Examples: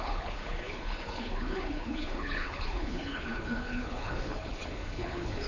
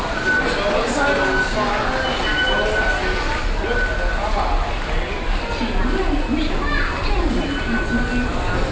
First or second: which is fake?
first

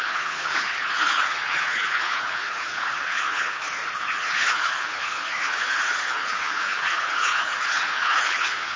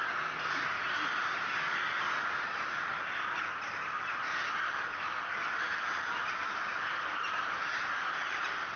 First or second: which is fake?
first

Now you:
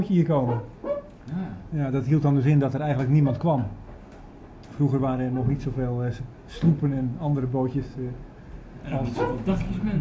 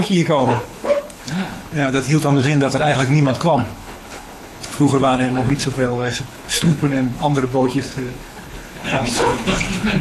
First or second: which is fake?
second